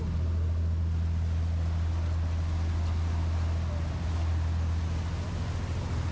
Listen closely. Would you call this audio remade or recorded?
recorded